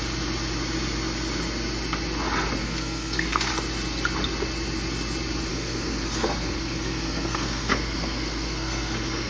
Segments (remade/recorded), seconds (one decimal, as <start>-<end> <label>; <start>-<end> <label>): 0.0-2.6 recorded; 2.6-3.5 remade; 3.5-5.5 recorded; 5.5-9.3 remade